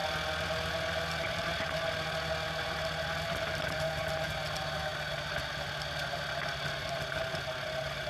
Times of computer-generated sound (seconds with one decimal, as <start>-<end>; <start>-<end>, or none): none

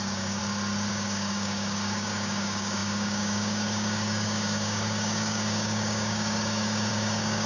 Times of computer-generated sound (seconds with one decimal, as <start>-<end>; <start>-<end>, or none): 0.0-0.4; 0.9-7.5

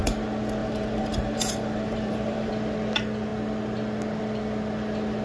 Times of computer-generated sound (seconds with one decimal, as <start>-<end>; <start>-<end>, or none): 0.6-2.5